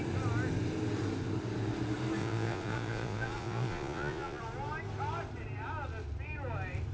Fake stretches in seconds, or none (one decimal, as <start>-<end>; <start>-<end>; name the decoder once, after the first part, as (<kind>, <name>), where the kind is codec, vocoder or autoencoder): 2.2-4.4 (vocoder, Vocos)